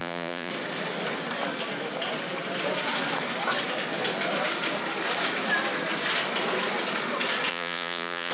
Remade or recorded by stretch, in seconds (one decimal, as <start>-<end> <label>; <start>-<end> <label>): 0.0-0.5 remade; 0.5-7.5 recorded; 7.5-8.3 remade